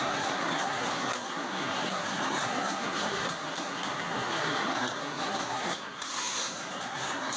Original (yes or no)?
no